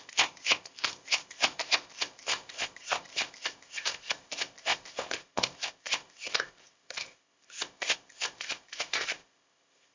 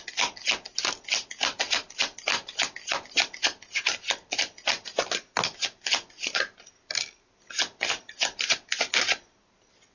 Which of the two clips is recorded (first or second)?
second